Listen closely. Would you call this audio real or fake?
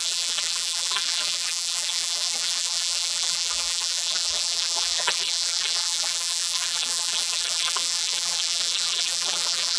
fake